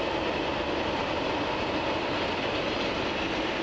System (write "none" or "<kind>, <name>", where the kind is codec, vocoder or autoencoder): none